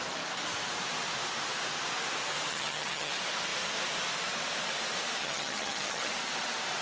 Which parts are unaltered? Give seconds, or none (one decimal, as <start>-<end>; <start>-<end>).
0.0-2.5; 3.1-5.2; 6.1-6.8